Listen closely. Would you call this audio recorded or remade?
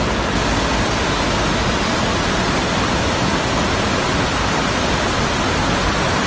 recorded